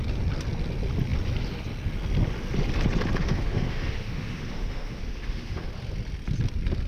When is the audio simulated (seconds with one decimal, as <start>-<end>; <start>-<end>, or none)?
3.2-5.7